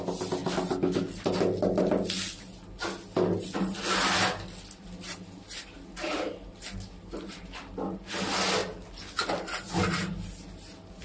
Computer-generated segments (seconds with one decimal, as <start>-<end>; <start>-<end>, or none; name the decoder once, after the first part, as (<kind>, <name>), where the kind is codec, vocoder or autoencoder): none